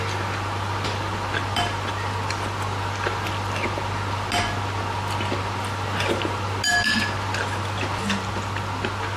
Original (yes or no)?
yes